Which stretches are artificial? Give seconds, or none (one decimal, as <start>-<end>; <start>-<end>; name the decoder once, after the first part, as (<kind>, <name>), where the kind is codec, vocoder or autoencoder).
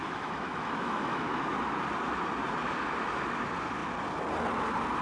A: 0.0-1.4 (autoencoder, DAC-VAE)